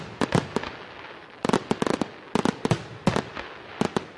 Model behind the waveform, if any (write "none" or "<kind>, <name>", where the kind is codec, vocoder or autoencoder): none